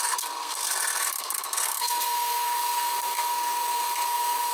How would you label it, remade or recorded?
remade